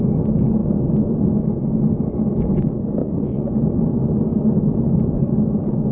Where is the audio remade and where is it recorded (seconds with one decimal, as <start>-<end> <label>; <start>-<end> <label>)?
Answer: 0.0-3.0 recorded; 3.0-3.5 remade; 3.5-5.9 recorded